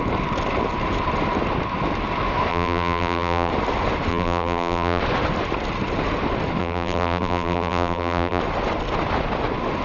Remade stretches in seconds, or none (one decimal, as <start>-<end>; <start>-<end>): 2.5-3.5; 4.1-5.0; 6.6-8.4